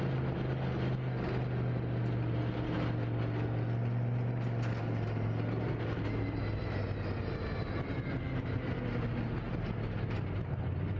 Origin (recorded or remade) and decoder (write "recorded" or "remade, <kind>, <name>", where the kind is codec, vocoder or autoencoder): recorded